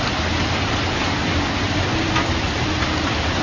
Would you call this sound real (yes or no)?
yes